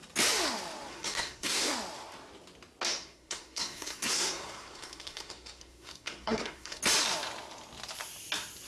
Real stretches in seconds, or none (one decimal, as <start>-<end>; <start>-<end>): 0.0-0.9; 1.7-2.9; 6.8-8.7